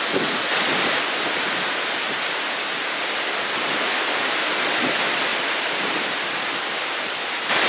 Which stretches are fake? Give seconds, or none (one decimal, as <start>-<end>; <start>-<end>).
none